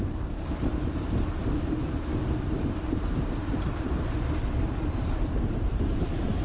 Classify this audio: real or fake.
fake